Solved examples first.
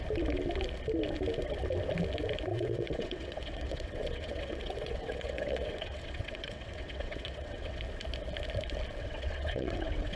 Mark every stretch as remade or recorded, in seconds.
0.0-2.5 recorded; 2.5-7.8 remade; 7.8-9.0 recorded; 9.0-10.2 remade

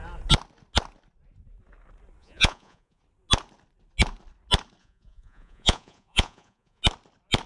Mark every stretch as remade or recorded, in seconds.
0.0-2.2 recorded; 2.2-3.0 remade; 3.0-4.8 recorded; 4.8-6.8 remade; 6.8-7.5 recorded

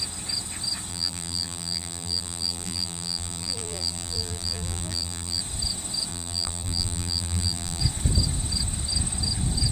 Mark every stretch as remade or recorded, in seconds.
0.0-0.9 recorded; 0.9-5.4 remade; 5.4-6.1 recorded; 6.1-7.8 remade; 7.8-9.7 recorded

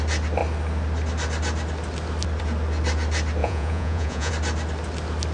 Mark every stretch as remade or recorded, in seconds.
0.0-3.4 recorded; 3.4-4.3 remade; 4.3-5.3 recorded